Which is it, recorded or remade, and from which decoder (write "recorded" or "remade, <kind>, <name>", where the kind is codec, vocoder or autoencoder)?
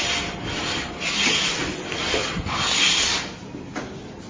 recorded